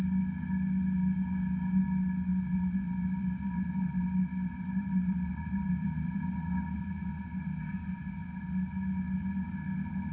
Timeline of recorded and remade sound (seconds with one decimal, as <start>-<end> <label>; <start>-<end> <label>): 0.0-2.3 recorded; 2.3-7.1 remade; 7.1-10.1 recorded